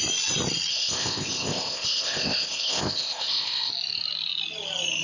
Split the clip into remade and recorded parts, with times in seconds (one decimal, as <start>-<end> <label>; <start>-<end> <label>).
0.0-0.7 recorded; 0.7-3.7 remade; 3.7-5.0 recorded